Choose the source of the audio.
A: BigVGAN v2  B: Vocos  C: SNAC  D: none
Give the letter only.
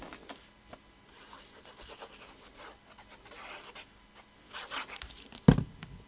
D